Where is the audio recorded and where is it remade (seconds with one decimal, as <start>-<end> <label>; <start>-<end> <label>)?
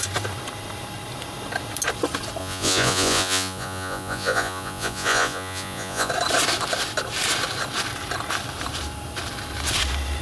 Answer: 0.0-2.4 recorded; 2.4-6.1 remade; 6.1-10.2 recorded